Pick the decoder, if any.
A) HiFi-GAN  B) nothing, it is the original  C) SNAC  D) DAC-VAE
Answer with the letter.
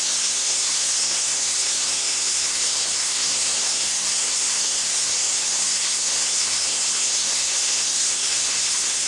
C